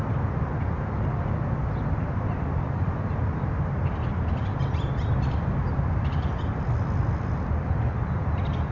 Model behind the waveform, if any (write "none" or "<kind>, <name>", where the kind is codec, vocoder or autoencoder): none